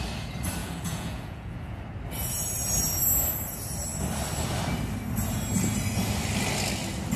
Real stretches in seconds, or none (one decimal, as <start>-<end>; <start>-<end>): 0.0-0.6; 1.8-7.2